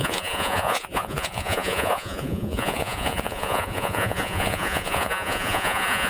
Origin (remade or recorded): remade